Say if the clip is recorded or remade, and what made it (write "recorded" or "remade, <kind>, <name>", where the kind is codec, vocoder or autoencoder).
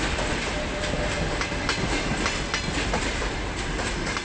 recorded